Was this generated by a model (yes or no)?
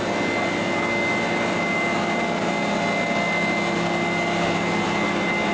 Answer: no